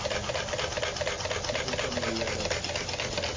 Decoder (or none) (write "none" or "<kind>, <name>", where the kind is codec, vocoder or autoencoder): none